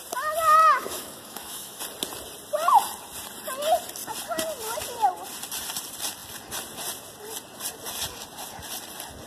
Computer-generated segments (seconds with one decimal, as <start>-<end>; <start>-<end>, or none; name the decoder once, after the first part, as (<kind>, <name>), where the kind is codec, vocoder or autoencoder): 0.6-1.8 (autoencoder, DAC-VAE)